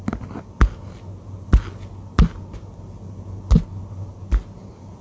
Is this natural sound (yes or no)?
yes